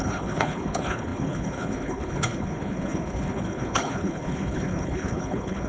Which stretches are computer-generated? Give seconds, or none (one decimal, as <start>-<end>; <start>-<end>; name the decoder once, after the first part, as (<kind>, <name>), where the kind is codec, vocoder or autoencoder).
0.0-5.7 (codec, HILCodec)